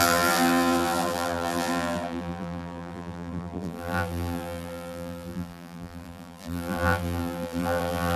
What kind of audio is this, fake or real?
fake